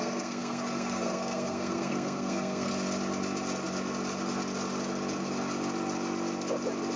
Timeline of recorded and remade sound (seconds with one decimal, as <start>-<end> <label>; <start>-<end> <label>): 0.0-2.7 remade; 2.7-7.0 recorded